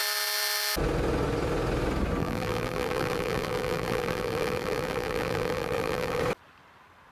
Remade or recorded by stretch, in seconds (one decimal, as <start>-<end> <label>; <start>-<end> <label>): 0.0-2.2 recorded; 2.2-6.2 remade; 6.2-7.1 recorded